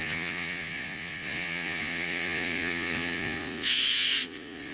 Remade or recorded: remade